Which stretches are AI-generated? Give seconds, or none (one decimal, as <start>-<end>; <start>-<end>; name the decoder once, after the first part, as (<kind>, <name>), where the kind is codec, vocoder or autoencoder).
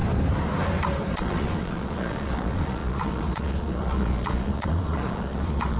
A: 1.1-5.8 (vocoder, Vocos)